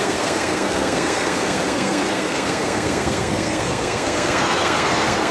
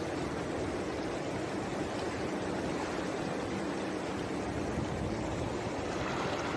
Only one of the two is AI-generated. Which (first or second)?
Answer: first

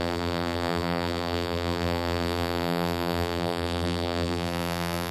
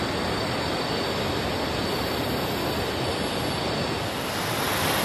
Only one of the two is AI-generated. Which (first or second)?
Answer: first